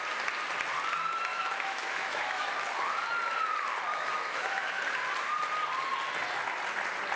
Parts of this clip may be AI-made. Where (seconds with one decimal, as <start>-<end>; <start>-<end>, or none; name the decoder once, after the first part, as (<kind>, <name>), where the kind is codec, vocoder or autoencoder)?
1.3-2.5 (autoencoder, DAC-VAE); 3.9-4.8